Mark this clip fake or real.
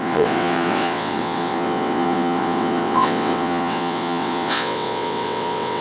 fake